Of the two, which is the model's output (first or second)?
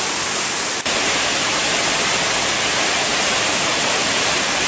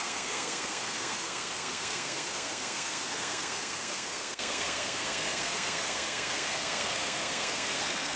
second